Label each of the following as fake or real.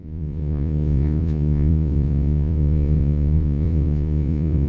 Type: fake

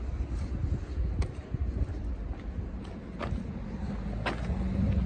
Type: real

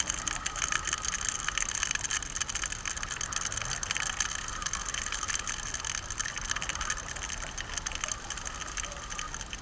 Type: real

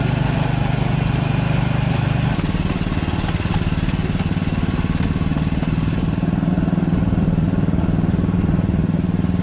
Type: real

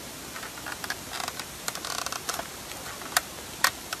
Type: real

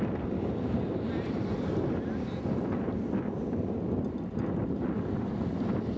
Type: real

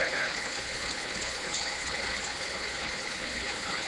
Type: fake